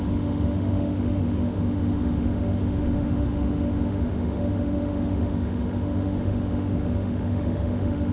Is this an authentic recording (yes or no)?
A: no